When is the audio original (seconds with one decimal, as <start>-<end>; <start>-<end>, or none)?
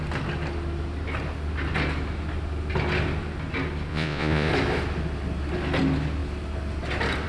0.0-3.9; 4.5-7.3